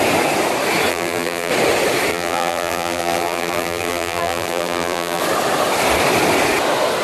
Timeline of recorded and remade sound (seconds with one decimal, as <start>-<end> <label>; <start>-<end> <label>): 0.0-0.9 recorded; 0.9-1.5 remade; 1.5-2.1 recorded; 2.1-5.2 remade; 5.2-7.0 recorded